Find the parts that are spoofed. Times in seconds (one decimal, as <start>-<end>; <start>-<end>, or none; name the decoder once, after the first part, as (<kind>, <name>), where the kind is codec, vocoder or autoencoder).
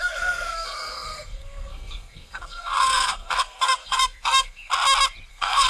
0.0-4.7 (codec, SNAC); 5.3-5.7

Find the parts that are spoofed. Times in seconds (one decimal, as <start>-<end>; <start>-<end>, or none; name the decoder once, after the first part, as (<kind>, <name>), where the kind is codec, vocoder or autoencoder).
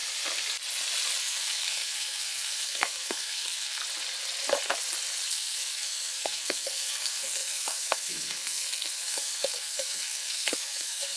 1.2-3.8 (codec, SNAC); 5.3-11.2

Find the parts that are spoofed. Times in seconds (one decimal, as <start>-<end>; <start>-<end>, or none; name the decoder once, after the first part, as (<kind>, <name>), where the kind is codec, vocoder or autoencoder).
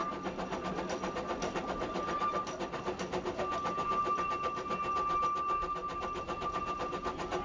none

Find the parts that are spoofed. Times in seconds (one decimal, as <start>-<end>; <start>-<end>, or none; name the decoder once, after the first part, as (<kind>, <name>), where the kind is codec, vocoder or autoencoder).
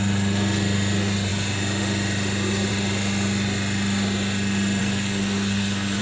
4.8-6.0 (codec, SNAC)